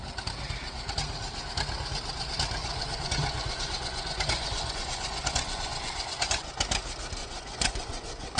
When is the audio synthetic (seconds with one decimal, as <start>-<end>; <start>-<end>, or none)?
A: 2.6-6.5; 7.2-8.4